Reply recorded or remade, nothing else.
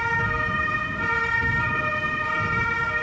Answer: recorded